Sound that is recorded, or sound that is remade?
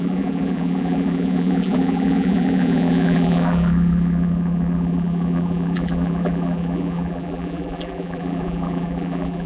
remade